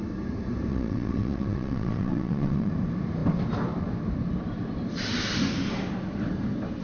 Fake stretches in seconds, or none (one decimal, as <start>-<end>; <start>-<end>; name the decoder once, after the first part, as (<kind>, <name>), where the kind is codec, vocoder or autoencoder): 0.7-2.7 (vocoder, WaveNeXt)